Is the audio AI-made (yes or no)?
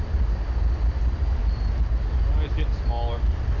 no